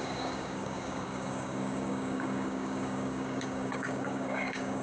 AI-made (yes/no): yes